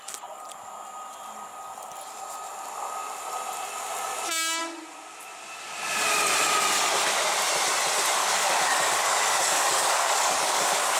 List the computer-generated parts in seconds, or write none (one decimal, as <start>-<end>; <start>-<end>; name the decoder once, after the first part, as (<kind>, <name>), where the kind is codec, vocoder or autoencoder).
8.2-11.0 (codec, DAC)

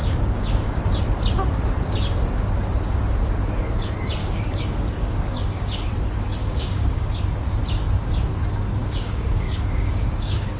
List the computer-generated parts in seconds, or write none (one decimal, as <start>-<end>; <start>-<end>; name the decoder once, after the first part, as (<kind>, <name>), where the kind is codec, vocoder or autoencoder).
0.0-0.8 (codec, DAC); 4.2-5.9; 6.4-7.1; 8.8-10.6

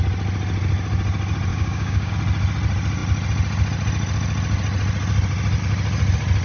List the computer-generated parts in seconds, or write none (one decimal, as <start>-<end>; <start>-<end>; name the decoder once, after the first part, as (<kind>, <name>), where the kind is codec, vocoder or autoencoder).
1.5-2.1 (codec, DAC)

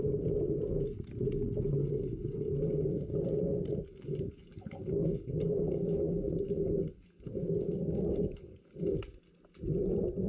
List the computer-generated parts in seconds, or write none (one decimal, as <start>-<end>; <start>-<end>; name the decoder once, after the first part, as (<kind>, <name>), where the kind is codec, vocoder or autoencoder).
1.8-3.1 (codec, DAC); 3.7-9.0

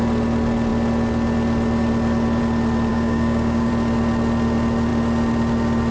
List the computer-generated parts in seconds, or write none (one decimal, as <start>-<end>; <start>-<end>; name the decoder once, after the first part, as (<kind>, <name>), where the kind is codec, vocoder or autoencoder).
2.9-3.7 (codec, DAC)

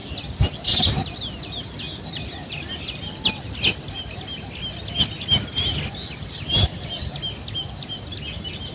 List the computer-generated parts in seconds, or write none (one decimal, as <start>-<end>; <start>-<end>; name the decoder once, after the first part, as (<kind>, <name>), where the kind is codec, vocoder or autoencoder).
none

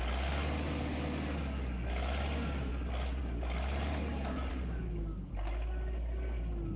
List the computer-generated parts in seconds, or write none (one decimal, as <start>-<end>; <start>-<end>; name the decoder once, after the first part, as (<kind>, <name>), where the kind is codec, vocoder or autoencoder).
4.5-5.3 (codec, DAC)